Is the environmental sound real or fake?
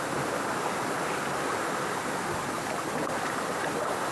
real